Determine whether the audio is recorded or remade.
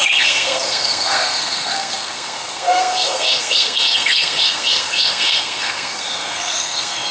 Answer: remade